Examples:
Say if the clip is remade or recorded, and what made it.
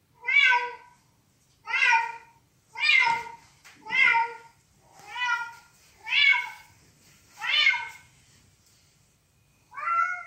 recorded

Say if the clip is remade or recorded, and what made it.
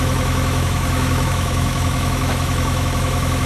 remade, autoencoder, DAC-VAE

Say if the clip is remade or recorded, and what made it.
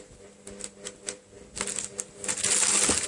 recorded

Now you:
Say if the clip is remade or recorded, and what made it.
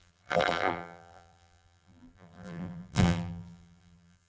remade, vocoder, BigVGAN v2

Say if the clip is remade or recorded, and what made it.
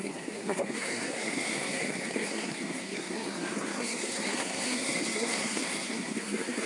remade, codec, SNAC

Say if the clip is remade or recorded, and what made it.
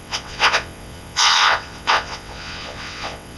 remade, vocoder, WaveNeXt